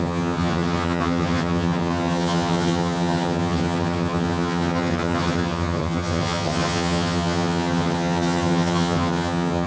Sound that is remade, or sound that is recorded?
remade